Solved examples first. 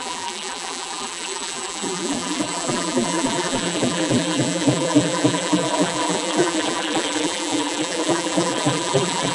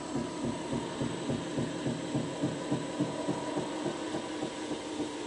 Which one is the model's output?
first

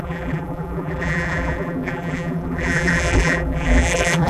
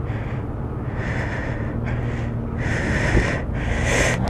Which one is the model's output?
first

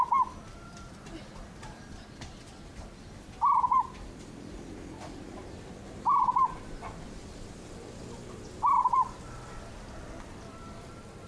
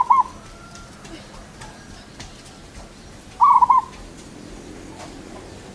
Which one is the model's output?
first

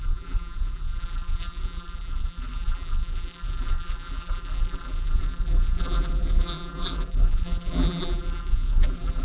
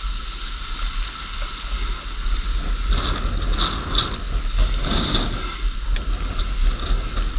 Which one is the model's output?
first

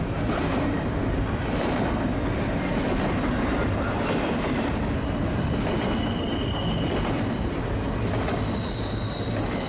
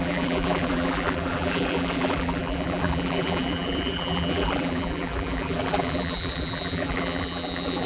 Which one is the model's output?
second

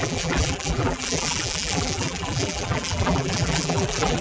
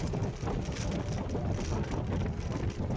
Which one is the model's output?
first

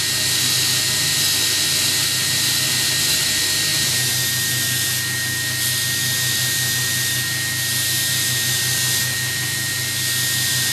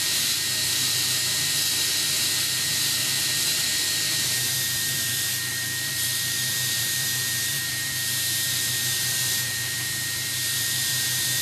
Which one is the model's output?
second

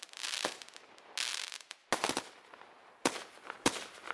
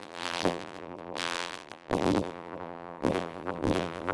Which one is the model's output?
second